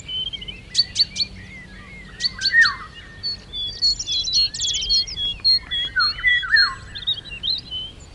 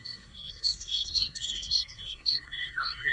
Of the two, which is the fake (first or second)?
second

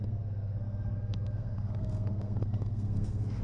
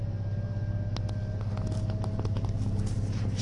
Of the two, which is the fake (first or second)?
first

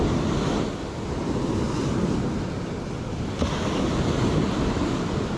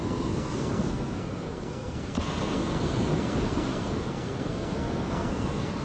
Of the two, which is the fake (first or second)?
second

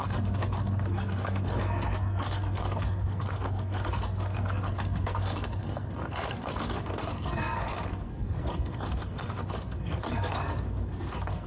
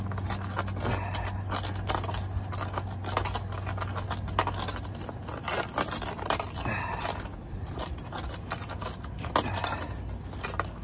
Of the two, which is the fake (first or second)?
first